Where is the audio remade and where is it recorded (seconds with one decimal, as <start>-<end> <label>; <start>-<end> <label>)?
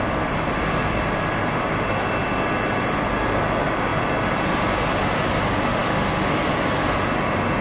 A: 0.0-7.6 recorded